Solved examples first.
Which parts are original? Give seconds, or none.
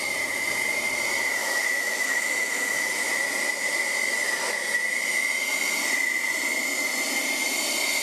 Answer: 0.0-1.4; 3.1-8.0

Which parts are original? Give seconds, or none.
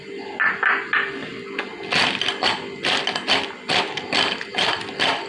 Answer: 0.0-5.3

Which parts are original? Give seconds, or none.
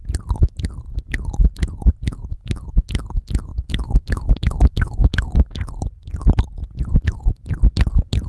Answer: 0.0-2.3; 3.1-3.5; 5.7-8.3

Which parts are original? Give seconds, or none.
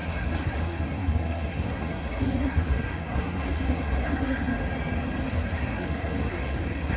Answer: 4.5-5.3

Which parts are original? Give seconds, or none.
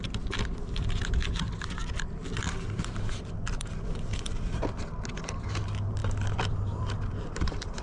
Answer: 0.0-1.8; 4.6-6.0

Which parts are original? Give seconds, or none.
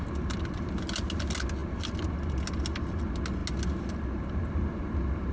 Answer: 0.0-5.3